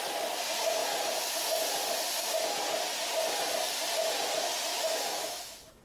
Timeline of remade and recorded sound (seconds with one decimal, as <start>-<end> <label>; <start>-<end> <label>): 0.0-4.7 recorded; 4.7-5.8 remade